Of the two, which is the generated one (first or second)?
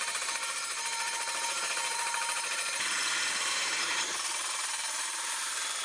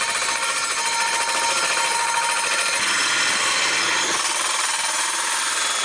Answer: first